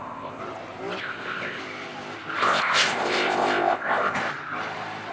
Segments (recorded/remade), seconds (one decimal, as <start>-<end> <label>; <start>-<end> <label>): 0.0-0.4 remade; 0.4-1.0 recorded; 1.0-1.6 remade; 1.6-2.4 recorded; 2.4-4.2 remade; 4.2-5.1 recorded